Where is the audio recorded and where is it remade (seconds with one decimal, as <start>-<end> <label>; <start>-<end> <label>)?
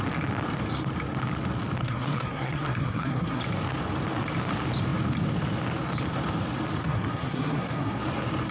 0.0-1.8 recorded; 1.8-3.4 remade; 3.4-6.8 recorded; 6.8-8.0 remade; 8.0-8.5 recorded